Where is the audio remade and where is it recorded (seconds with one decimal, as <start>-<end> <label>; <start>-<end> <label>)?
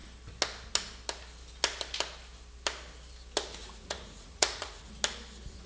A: 0.0-3.6 recorded; 3.6-4.9 remade; 4.9-5.7 recorded